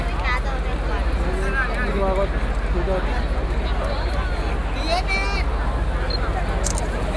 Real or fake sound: real